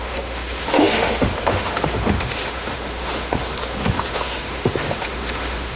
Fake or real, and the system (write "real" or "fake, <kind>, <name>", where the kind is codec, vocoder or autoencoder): fake, autoencoder, DAC-VAE